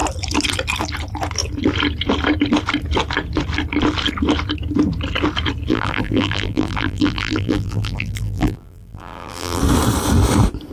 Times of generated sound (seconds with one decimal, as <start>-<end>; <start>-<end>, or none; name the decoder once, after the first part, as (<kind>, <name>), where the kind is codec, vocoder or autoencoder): 5.7-9.6 (vocoder, BigVGAN v2)